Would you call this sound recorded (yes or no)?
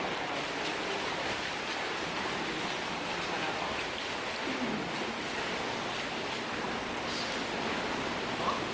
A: yes